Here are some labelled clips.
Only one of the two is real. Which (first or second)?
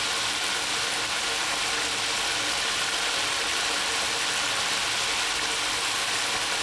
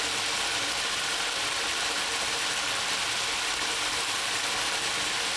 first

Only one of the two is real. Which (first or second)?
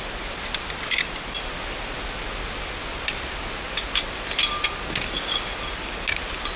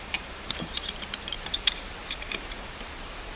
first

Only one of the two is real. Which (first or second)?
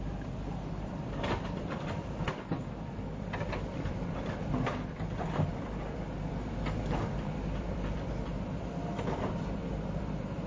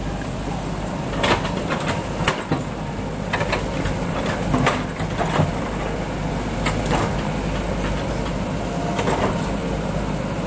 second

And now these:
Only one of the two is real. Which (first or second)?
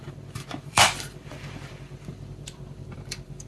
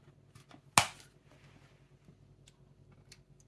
second